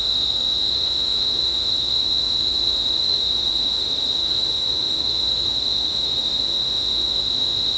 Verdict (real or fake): fake